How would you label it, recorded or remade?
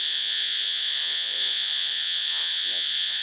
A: remade